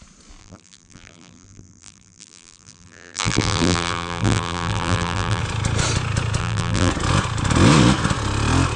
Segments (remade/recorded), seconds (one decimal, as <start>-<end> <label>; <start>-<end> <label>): 0.0-0.4 recorded; 0.4-5.4 remade; 5.4-6.4 recorded; 6.4-6.9 remade; 6.9-8.8 recorded